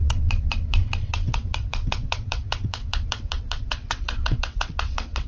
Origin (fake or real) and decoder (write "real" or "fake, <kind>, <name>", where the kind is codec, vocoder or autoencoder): fake, vocoder, WaveNeXt